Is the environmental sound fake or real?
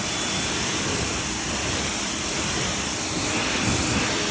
fake